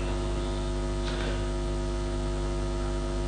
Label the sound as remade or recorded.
recorded